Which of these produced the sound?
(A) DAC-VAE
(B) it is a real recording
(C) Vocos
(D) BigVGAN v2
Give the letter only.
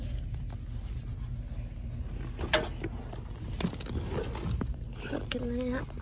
B